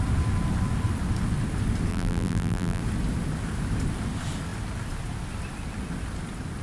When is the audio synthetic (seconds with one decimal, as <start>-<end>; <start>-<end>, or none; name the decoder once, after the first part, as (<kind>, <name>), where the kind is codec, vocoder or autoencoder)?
1.9-2.8 (vocoder, BigVGAN v2)